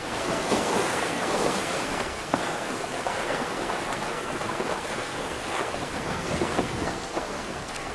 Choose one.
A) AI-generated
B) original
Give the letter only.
A